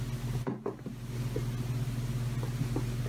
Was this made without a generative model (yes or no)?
yes